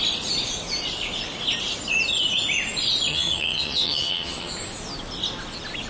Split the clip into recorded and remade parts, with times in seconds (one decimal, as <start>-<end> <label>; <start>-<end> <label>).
0.0-3.1 recorded; 3.1-4.5 remade; 4.5-5.9 recorded